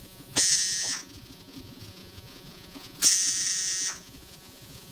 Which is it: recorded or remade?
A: remade